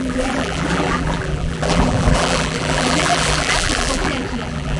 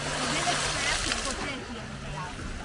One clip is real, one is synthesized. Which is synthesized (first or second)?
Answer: first